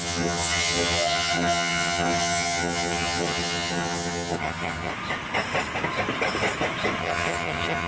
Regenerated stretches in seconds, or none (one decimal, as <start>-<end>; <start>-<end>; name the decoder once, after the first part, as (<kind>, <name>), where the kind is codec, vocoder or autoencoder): 0.0-4.9 (vocoder, HiFi-GAN); 7.0-7.9